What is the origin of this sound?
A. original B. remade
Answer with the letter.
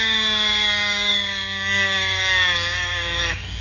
B